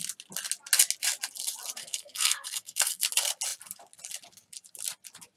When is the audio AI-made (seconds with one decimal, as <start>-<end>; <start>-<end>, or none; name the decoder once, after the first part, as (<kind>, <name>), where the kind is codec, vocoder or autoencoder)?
1.8-3.0 (codec, SNAC)